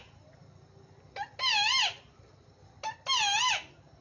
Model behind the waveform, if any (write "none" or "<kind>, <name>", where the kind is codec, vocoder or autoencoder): none